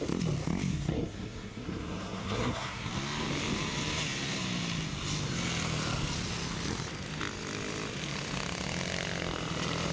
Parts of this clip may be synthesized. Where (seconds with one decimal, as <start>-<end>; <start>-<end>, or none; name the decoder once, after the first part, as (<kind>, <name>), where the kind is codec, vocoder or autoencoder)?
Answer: 0.7-2.9 (codec, SNAC)